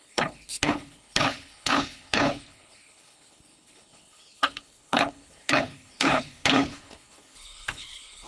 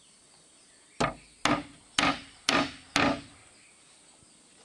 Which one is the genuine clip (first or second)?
second